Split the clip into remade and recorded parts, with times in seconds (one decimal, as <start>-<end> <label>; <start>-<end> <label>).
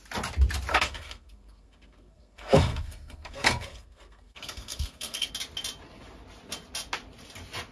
0.0-0.7 recorded; 0.7-5.3 remade; 5.3-7.7 recorded